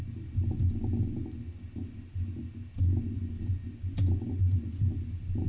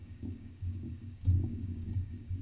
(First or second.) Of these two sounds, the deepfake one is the second